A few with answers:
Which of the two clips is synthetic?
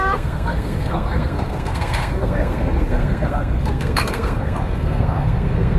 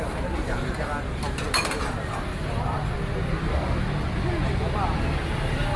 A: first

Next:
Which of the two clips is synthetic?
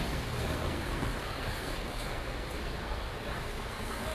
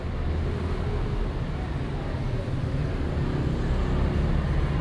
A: first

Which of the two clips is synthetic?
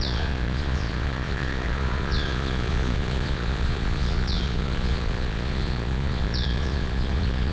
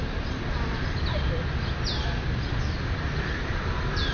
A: first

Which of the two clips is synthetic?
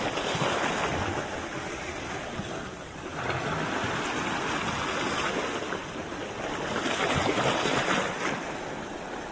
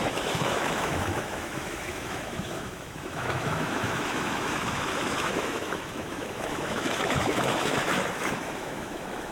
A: second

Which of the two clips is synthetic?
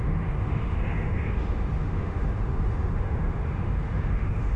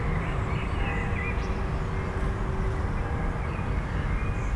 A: first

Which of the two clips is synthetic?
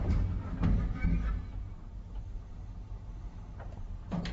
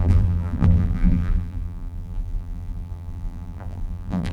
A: second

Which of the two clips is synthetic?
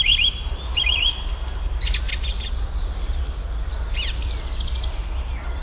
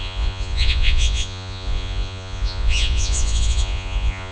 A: second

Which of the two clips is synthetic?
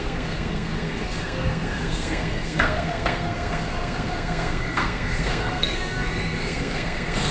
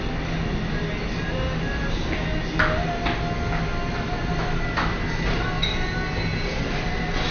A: first